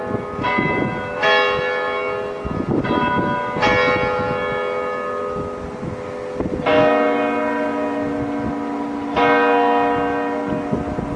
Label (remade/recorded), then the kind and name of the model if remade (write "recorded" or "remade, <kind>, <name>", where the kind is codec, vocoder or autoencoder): recorded